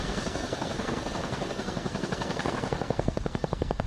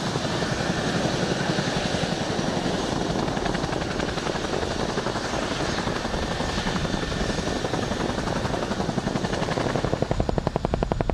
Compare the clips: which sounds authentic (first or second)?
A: second